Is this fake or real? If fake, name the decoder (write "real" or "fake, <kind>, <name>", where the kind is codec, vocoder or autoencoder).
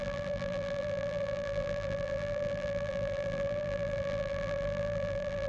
fake, vocoder, BigVGAN v2